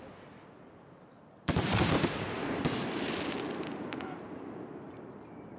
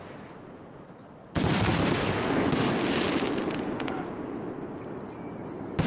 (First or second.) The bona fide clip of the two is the second